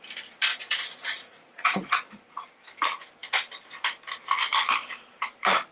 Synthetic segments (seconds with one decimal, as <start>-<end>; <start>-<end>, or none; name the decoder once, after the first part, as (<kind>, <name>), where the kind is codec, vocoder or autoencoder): 0.5-2.5 (vocoder, Vocos)